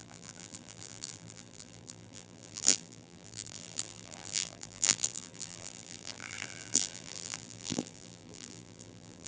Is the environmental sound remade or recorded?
remade